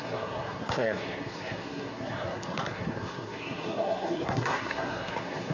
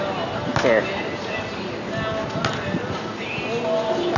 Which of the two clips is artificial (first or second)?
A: first